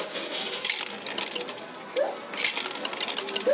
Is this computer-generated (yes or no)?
no